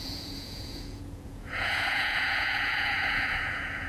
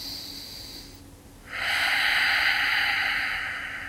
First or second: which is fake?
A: first